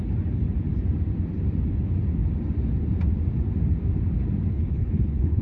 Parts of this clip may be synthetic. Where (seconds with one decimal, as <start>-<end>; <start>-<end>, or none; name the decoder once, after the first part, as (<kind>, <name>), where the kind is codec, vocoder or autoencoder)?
4.5-5.4 (codec, HILCodec)